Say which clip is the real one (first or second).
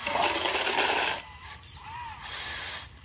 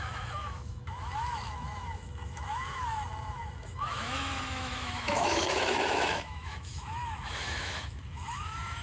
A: first